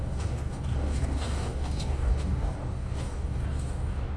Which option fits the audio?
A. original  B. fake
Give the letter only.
B